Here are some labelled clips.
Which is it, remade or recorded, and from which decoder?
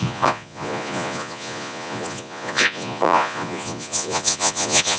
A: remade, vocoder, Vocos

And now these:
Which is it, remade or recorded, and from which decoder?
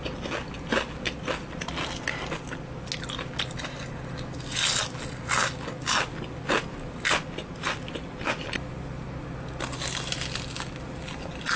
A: recorded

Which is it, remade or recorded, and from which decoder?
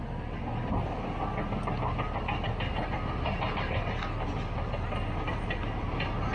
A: recorded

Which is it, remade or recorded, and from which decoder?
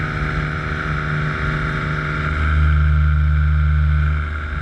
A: recorded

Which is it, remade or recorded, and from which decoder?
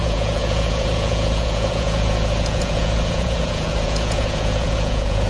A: remade, vocoder, Vocos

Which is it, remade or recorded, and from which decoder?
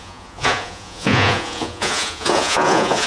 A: remade, vocoder, Vocos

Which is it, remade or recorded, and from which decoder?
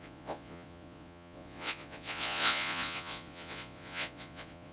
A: remade, vocoder, Vocos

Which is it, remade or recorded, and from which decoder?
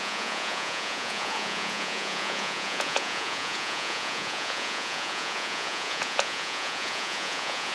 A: remade, vocoder, Vocos